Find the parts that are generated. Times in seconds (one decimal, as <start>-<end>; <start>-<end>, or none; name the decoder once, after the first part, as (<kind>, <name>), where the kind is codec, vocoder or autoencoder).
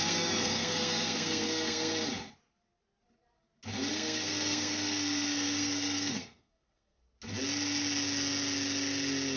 0.0-1.9 (codec, SNAC); 3.9-7.0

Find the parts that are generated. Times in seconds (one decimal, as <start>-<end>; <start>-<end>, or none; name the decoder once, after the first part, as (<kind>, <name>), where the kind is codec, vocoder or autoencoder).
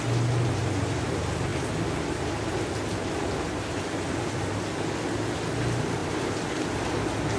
none